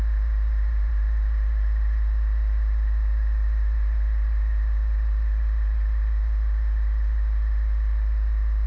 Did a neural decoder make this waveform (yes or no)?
yes